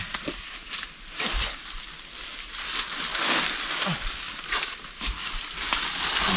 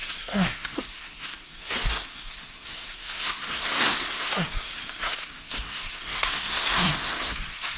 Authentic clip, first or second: first